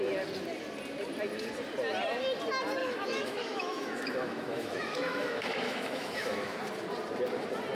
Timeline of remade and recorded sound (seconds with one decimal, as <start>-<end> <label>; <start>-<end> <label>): 0.0-2.8 recorded; 2.8-6.6 remade; 6.6-7.7 recorded